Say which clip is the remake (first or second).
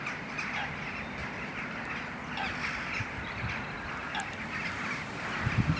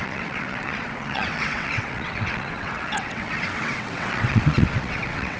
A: second